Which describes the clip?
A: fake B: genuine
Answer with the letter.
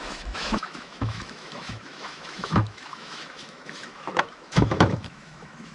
A